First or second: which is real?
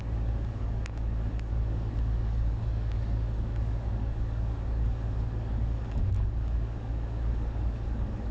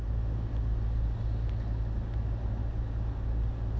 second